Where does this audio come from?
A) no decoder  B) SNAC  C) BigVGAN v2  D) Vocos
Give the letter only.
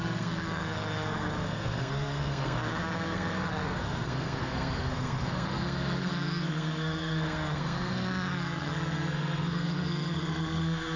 B